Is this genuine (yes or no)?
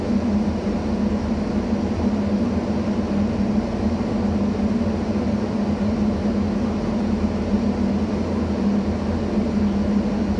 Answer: yes